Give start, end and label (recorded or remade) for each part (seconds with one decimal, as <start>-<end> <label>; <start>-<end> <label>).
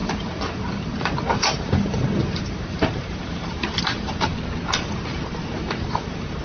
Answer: 0.0-4.3 remade; 4.3-4.8 recorded; 4.8-6.4 remade